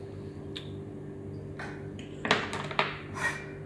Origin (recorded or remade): recorded